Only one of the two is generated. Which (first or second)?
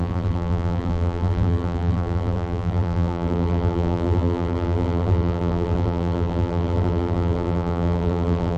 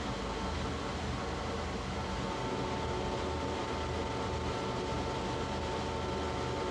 first